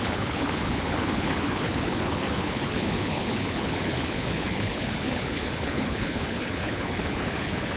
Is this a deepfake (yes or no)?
yes